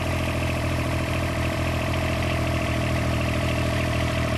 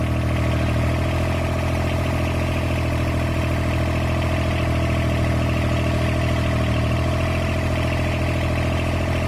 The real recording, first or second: second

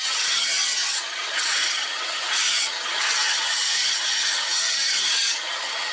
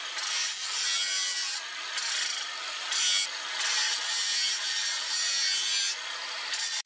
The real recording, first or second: second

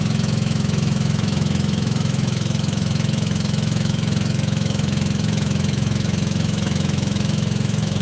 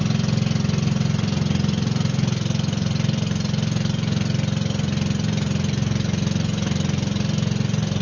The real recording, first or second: second